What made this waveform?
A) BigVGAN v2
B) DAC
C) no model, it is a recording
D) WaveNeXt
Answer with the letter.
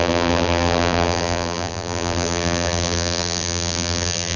A